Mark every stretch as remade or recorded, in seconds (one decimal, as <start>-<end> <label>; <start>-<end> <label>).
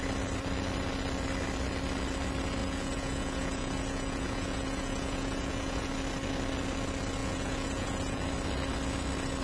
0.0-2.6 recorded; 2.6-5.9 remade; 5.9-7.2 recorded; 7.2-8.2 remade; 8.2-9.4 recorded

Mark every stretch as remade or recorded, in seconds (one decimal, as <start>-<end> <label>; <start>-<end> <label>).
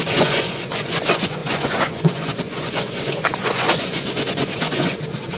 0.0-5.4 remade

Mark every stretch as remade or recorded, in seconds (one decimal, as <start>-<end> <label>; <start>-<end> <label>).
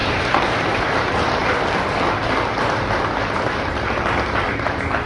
0.0-5.1 recorded